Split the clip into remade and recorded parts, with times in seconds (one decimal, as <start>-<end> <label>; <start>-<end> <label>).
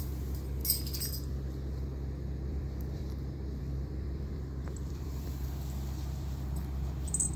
0.0-0.6 remade; 0.6-2.5 recorded; 2.5-3.0 remade; 3.0-3.6 recorded; 3.6-7.4 remade